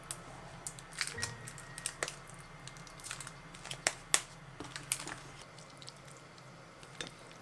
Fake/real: real